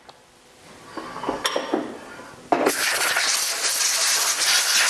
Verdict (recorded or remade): recorded